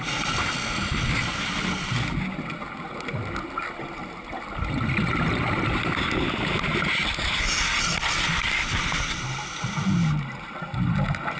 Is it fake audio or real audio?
real